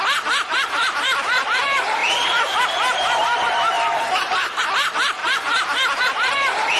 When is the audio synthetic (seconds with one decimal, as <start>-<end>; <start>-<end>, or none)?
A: 0.0-5.2; 6.0-6.8